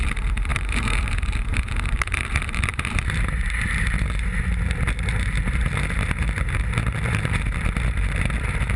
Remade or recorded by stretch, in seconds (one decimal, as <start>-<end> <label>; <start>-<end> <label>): 0.0-8.8 remade